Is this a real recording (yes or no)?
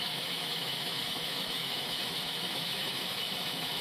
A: no